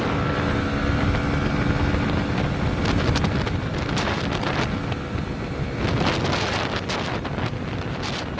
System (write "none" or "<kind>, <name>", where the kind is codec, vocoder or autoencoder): none